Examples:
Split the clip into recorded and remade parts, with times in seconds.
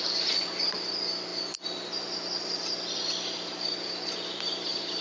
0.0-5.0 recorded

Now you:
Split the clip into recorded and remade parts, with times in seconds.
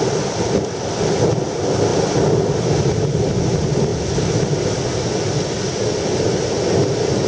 0.0-7.3 recorded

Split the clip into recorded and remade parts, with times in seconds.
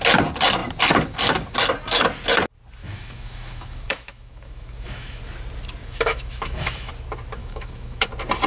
0.0-2.8 recorded; 2.8-5.2 remade; 5.2-5.8 recorded; 5.8-6.9 remade; 6.9-7.4 recorded; 7.4-8.1 remade; 8.1-8.5 recorded